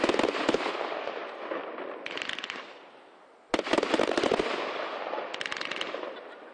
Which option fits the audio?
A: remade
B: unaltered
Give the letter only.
B